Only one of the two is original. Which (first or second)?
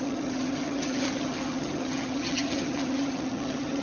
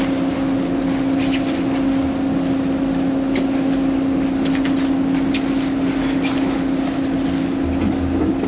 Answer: second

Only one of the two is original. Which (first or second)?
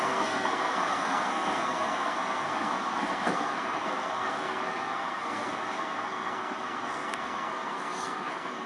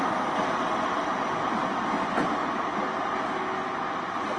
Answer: second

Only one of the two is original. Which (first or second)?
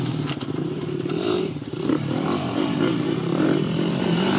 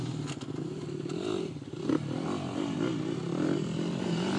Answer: second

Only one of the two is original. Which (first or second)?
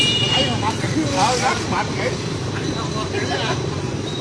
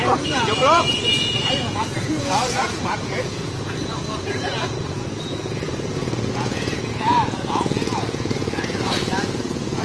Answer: first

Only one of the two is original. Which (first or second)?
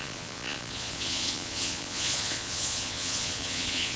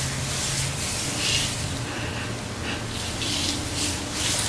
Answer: second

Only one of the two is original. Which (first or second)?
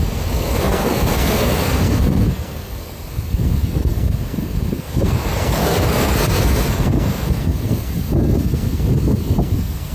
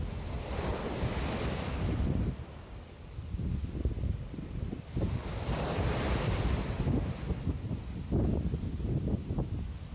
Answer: second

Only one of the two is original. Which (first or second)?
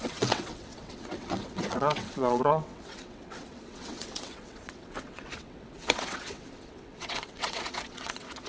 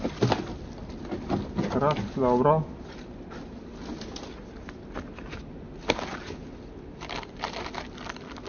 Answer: second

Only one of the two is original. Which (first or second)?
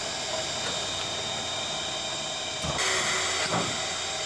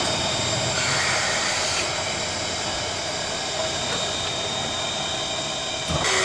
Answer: first